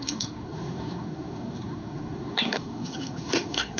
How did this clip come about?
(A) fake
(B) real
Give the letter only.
A